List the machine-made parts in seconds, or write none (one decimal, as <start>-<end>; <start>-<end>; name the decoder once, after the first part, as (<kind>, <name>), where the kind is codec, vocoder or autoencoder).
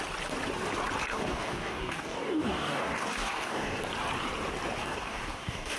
1.1-3.8 (codec, DAC); 4.8-5.8